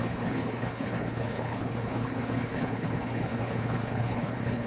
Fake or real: fake